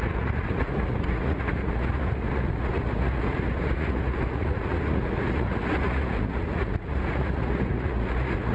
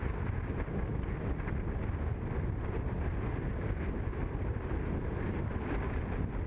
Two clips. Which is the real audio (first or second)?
second